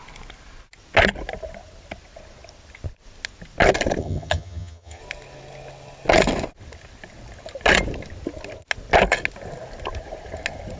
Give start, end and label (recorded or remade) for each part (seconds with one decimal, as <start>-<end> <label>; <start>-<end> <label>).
0.0-4.0 recorded; 4.0-5.0 remade; 5.0-10.8 recorded